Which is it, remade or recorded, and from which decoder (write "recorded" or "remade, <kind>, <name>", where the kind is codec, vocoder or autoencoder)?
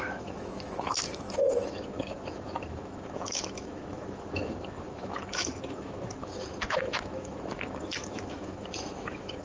remade, autoencoder, DAC-VAE